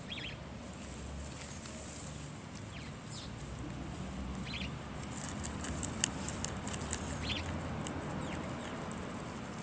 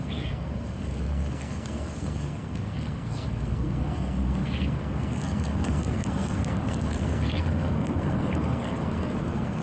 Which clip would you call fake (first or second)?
second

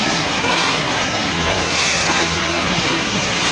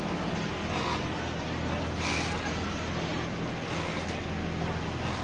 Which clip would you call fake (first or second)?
first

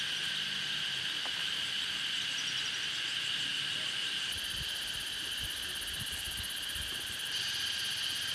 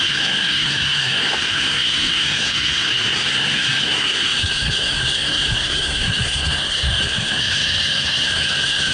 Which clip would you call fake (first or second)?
second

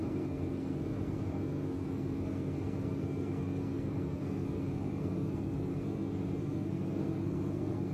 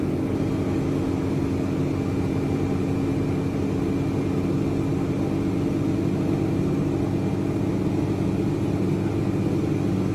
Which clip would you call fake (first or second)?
first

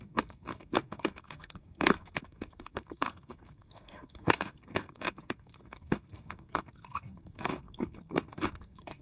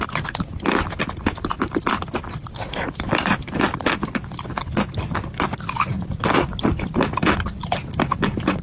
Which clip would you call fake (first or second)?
first